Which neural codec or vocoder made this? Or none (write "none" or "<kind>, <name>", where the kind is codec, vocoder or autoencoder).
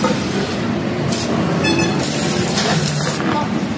none